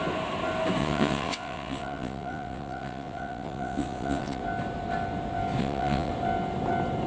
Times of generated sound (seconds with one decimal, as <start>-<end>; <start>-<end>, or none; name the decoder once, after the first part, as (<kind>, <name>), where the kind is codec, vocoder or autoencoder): 0.8-4.4 (vocoder, WaveNeXt); 5.6-6.1